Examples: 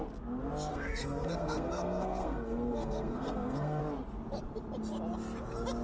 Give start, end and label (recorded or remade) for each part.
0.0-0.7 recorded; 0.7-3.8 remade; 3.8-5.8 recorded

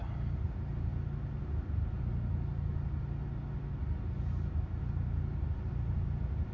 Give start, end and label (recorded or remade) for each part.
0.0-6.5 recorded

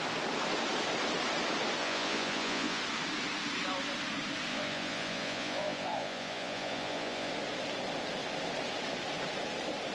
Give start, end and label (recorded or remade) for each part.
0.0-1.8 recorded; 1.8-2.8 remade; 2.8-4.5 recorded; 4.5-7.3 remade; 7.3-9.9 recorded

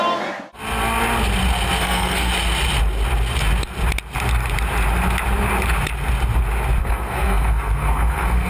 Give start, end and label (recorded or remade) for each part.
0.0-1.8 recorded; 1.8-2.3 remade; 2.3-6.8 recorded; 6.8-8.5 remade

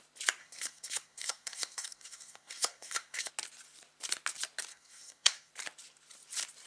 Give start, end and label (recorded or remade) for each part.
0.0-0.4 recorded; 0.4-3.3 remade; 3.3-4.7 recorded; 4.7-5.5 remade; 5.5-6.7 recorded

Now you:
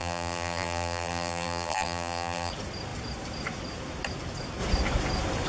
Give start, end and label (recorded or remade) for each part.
0.0-2.5 remade; 2.5-5.5 recorded

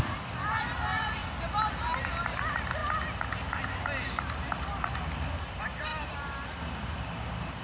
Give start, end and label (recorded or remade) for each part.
0.0-2.8 remade; 2.8-5.4 recorded; 5.4-5.9 remade; 5.9-7.6 recorded

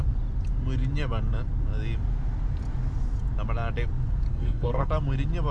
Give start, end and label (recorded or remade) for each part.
0.0-4.3 recorded; 4.3-4.9 remade; 4.9-5.5 recorded